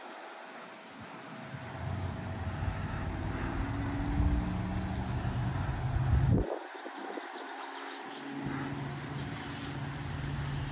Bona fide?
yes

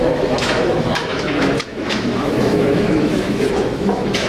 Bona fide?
no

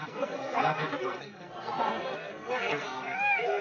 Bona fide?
no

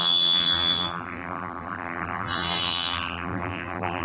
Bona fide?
no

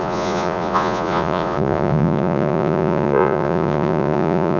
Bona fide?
no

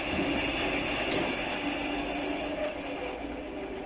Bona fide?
yes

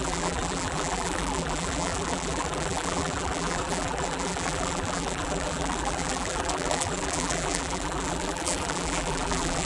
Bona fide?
no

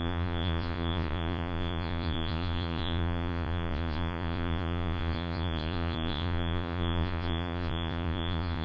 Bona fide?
no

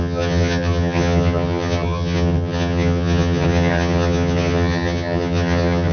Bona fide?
no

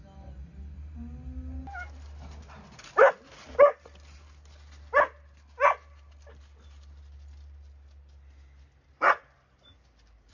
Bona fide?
yes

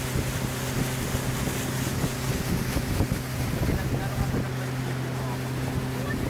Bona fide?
yes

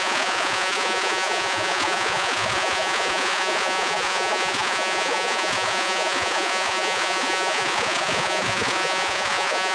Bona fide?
no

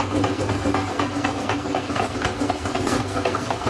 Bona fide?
no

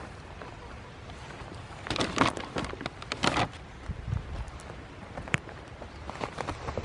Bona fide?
no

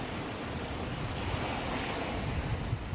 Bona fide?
yes